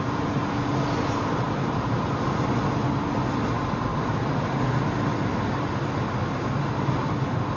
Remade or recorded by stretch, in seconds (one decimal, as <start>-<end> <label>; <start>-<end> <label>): 0.0-7.6 recorded